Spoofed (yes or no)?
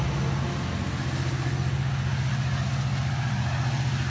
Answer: no